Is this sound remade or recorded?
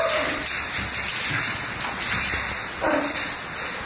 recorded